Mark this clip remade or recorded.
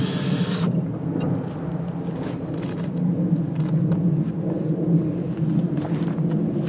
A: recorded